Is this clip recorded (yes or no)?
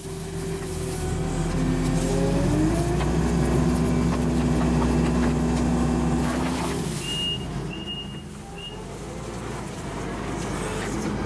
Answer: yes